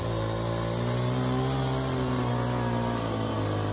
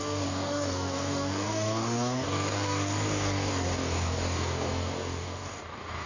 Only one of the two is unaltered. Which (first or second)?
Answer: first